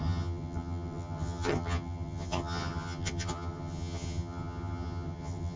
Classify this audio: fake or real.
fake